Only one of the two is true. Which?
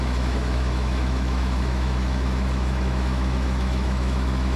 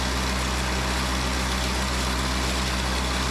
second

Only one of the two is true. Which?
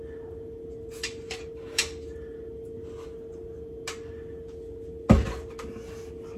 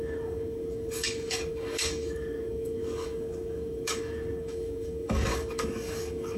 first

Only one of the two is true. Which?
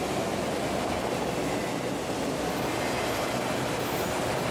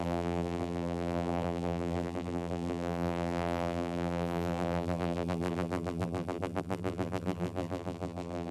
first